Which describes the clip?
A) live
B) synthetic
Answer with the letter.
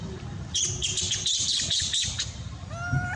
A